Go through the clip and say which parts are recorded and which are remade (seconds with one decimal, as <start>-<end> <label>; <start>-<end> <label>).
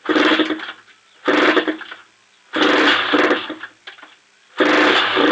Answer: 0.0-5.3 recorded